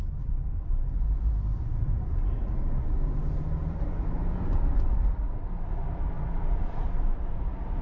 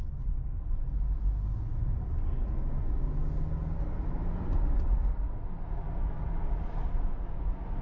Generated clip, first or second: first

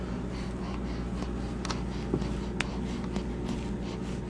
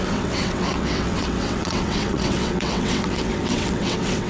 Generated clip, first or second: second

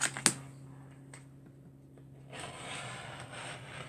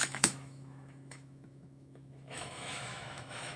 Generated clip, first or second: second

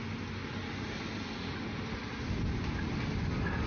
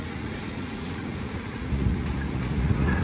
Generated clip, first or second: second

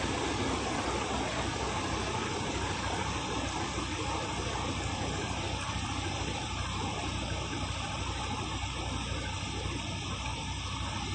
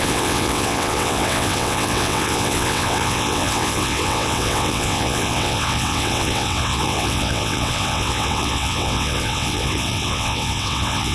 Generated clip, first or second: second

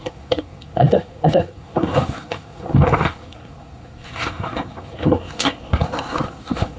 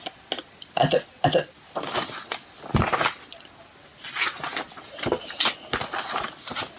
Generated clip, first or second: first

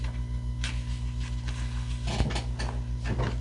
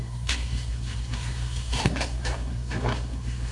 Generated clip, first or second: second